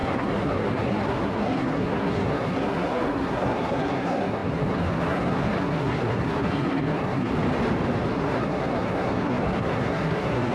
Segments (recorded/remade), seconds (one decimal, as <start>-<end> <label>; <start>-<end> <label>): 0.0-7.3 remade; 7.3-8.1 recorded; 8.1-10.5 remade